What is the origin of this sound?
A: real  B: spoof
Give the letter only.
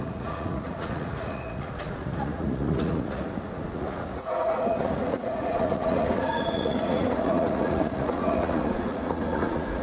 B